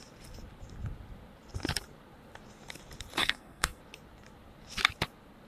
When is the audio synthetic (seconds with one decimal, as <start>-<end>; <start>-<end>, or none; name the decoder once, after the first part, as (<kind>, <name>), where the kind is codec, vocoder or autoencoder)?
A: 3.2-3.8 (codec, SNAC)